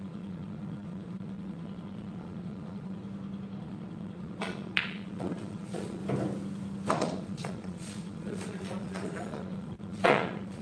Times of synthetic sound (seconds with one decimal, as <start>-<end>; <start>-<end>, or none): 0.0-3.0; 3.6-6.0; 6.9-10.6